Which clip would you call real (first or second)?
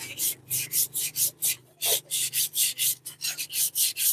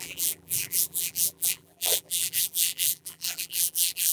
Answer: first